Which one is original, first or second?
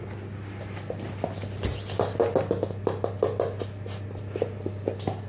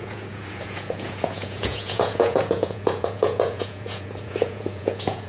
first